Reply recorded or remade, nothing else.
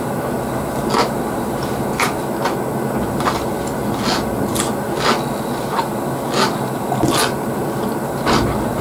recorded